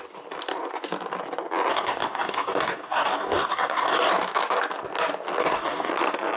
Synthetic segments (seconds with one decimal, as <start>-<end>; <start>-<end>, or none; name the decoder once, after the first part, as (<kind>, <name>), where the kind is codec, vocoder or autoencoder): 1.7-4.1 (codec, DAC); 5.4-5.9